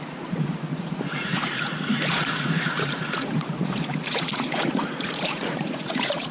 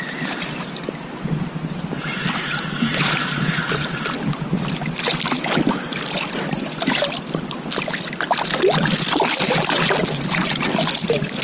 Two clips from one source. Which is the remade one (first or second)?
first